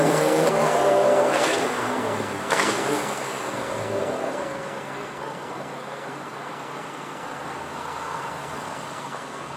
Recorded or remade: remade